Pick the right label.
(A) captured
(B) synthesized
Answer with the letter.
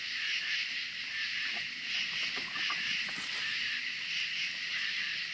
A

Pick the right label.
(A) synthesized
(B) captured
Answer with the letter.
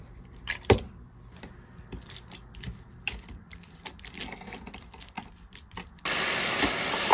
A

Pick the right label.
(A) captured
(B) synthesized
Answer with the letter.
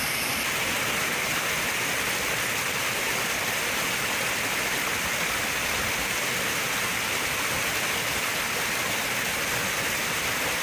A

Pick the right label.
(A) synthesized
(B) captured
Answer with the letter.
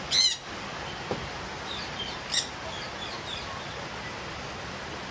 B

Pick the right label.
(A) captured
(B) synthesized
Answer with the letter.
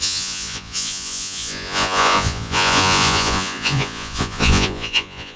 B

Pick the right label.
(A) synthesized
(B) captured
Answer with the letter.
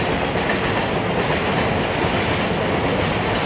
B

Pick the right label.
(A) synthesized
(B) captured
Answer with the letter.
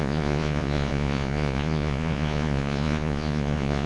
A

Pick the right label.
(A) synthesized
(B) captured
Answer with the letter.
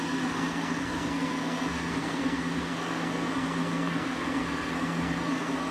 A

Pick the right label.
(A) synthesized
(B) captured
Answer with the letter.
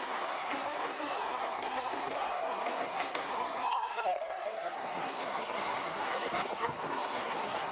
A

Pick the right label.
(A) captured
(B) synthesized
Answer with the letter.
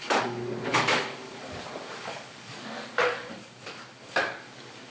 B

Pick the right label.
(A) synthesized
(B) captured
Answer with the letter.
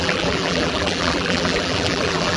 A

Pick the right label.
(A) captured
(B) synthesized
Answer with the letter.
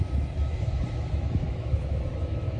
B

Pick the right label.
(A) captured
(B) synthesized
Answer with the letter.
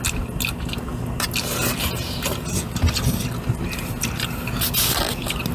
A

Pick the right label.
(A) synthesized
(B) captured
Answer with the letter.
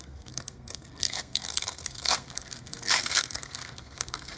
A